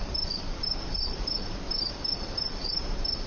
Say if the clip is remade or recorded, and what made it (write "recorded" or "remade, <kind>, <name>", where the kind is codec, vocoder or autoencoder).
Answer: remade, vocoder, BigVGAN v2